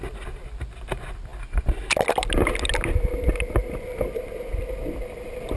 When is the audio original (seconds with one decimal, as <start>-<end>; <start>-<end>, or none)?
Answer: 0.0-5.6